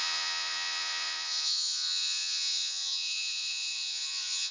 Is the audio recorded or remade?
remade